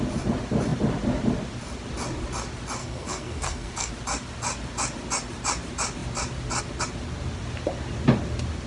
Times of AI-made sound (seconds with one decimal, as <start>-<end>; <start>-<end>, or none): 2.8-3.9

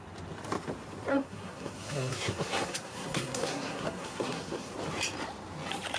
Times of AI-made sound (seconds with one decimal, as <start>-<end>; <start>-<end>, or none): 1.1-4.7

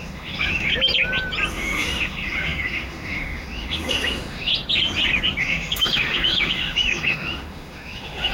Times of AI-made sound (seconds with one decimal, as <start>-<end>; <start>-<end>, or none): 0.0-0.7; 1.5-4.5; 5.4-8.3